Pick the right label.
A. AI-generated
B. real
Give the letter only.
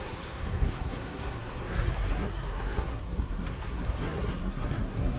A